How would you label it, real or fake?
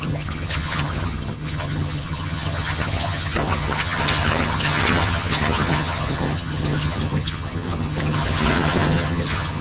fake